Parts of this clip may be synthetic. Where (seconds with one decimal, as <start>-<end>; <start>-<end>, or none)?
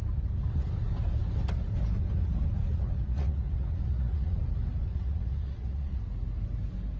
2.7-4.4; 4.9-6.0